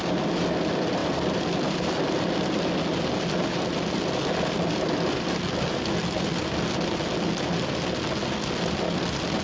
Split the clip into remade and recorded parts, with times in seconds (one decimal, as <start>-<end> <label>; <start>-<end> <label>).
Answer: 0.0-9.4 recorded